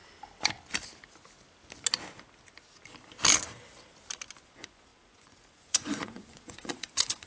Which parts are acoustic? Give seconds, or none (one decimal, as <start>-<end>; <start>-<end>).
0.0-4.4